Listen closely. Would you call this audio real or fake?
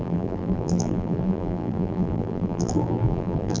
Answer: fake